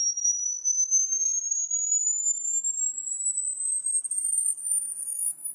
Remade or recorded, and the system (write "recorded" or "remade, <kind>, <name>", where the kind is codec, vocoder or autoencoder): remade, autoencoder, DAC-VAE